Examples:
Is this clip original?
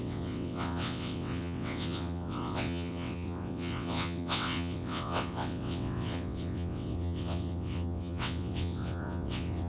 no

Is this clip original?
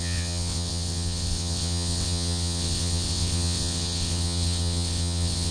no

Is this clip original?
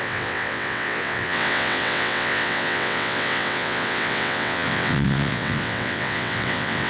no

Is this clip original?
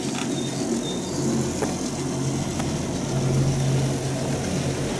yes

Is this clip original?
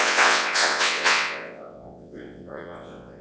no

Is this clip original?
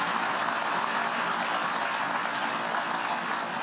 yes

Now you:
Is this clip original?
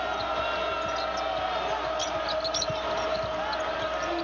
yes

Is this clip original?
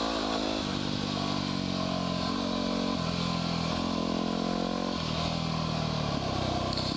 yes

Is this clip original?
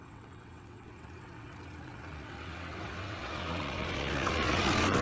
no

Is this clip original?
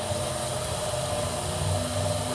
yes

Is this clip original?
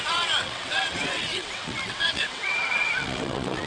no